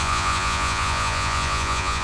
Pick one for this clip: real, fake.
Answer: fake